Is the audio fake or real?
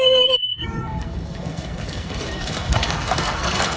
fake